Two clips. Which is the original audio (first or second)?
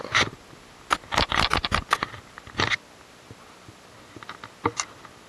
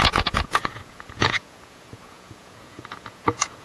first